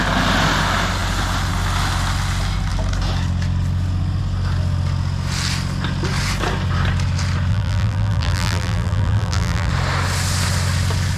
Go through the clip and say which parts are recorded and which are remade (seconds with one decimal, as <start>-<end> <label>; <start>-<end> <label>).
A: 0.0-7.5 recorded; 7.5-9.7 remade; 9.7-11.2 recorded